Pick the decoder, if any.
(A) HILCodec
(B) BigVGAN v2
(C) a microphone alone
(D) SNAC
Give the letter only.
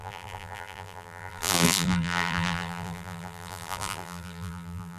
B